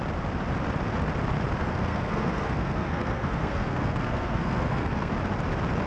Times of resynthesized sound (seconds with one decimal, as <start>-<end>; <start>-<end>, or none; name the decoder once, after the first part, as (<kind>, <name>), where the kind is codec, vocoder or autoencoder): 1.6-5.1 (codec, SNAC)